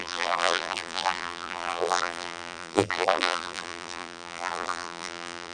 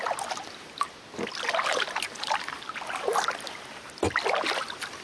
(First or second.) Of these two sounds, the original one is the second